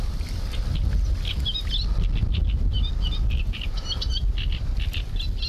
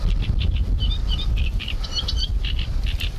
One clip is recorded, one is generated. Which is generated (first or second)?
second